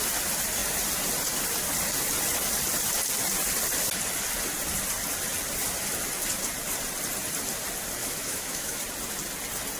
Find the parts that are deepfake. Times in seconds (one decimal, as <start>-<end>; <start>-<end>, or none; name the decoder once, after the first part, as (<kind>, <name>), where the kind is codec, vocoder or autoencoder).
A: 8.0-8.8 (autoencoder, DAC-VAE)